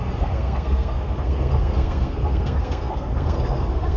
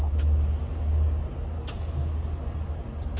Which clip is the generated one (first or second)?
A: first